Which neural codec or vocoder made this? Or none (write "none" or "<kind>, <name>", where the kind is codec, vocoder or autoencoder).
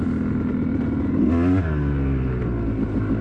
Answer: none